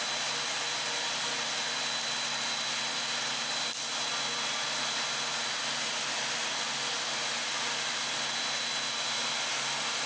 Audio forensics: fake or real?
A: real